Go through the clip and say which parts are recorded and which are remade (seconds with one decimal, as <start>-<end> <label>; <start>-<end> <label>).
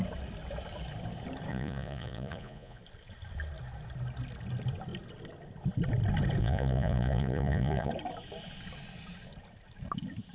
0.0-1.5 recorded; 1.5-2.8 remade; 2.8-6.4 recorded; 6.4-7.9 remade; 7.9-10.3 recorded